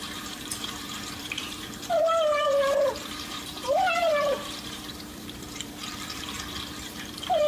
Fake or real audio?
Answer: fake